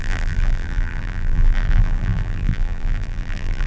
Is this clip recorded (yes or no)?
no